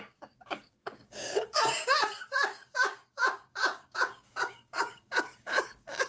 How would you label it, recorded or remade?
remade